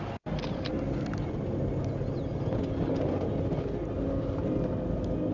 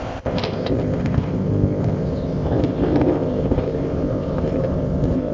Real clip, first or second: first